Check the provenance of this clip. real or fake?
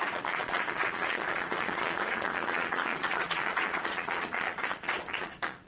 fake